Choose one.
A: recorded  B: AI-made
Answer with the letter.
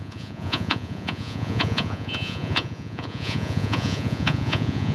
B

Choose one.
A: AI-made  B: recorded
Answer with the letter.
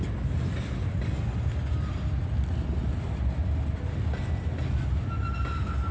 B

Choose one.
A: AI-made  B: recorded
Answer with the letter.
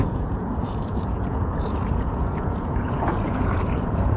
A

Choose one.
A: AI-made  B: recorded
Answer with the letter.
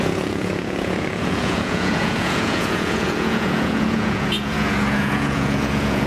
A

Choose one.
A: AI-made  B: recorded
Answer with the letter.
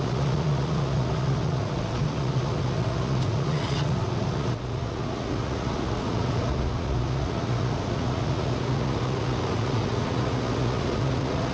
A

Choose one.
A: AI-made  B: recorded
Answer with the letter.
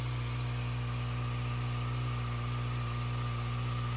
B